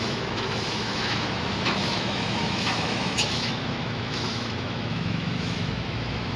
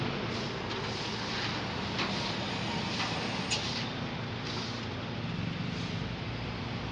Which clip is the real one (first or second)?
second